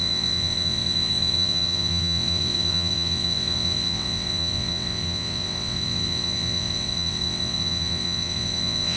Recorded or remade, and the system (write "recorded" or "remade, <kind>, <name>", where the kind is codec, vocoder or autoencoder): remade, vocoder, WaveNeXt